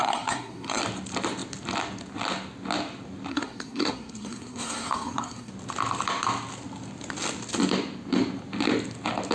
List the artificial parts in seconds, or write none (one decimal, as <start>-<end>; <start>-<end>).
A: 0.0-0.8; 3.3-5.5